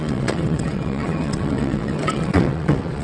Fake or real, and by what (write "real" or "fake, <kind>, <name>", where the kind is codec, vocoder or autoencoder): fake, vocoder, WaveNeXt